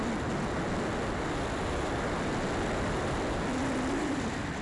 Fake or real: real